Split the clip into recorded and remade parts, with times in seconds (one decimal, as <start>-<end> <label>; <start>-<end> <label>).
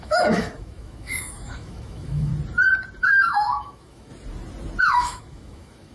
0.0-2.3 remade; 2.3-3.0 recorded; 3.0-4.1 remade; 4.1-4.8 recorded; 4.8-5.9 remade